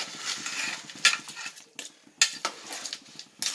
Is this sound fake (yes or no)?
no